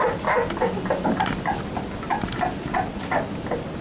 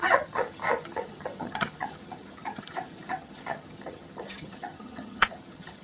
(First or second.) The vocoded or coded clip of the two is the second